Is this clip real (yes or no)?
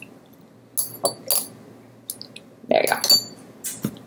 yes